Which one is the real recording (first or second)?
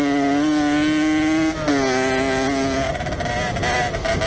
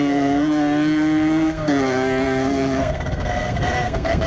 first